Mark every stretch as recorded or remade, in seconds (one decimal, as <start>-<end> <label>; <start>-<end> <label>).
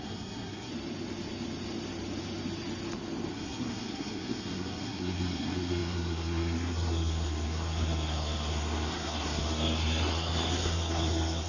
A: 0.0-0.7 remade; 0.7-3.3 recorded; 3.3-11.5 remade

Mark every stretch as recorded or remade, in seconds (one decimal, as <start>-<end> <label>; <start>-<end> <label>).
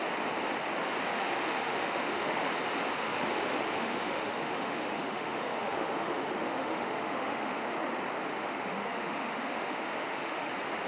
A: 0.0-1.1 recorded; 1.1-2.5 remade; 2.5-3.0 recorded; 3.0-7.9 remade; 7.9-8.3 recorded; 8.3-10.5 remade; 10.5-10.9 recorded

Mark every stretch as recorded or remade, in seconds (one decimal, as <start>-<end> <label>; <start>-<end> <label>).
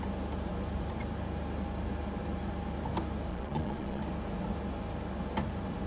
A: 0.0-3.3 recorded; 3.3-4.0 remade; 4.0-5.9 recorded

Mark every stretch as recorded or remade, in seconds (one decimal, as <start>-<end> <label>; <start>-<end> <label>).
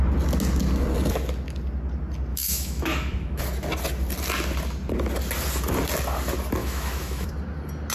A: 0.0-2.3 recorded; 2.3-3.4 remade; 3.4-6.6 recorded; 6.6-7.3 remade; 7.3-7.9 recorded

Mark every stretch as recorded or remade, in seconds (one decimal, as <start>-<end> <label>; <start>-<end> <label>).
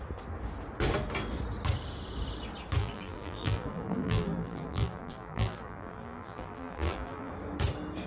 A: 0.0-2.8 recorded; 2.8-7.3 remade; 7.3-8.1 recorded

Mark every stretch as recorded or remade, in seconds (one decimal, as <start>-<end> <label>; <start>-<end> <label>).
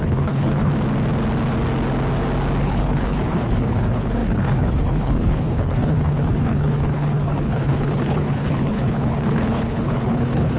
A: 0.0-0.7 remade; 0.7-2.6 recorded; 2.6-10.6 remade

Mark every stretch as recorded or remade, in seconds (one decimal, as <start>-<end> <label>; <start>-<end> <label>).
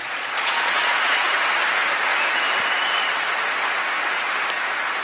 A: 0.0-1.3 remade; 1.3-5.0 recorded